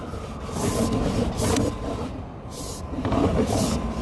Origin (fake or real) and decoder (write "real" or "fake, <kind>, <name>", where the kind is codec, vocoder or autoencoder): real